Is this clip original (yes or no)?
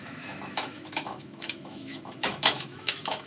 no